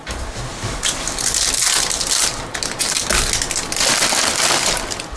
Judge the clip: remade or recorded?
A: recorded